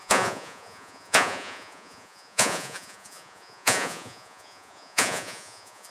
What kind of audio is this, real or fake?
fake